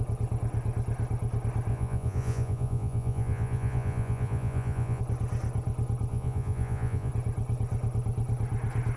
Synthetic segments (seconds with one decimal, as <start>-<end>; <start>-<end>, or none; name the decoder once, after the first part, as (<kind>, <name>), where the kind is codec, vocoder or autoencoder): 1.7-5.0 (vocoder, Vocos); 6.1-7.1